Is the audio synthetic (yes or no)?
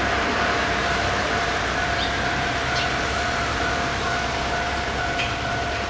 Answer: yes